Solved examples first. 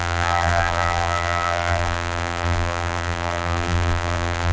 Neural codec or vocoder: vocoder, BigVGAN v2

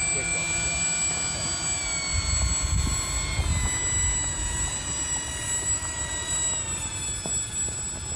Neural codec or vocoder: none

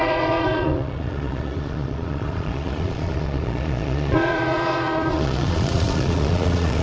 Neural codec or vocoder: vocoder, Vocos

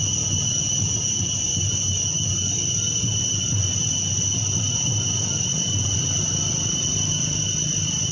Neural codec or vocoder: none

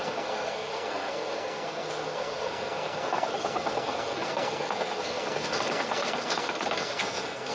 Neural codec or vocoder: codec, SNAC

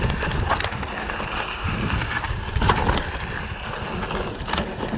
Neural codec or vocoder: none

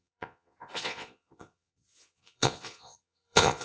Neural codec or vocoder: vocoder, Vocos